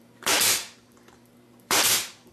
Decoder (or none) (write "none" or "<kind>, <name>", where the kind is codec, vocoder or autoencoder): vocoder, BigVGAN v2